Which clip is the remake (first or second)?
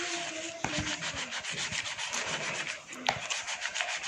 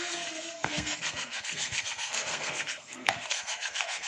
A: second